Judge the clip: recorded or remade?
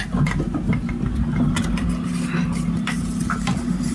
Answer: recorded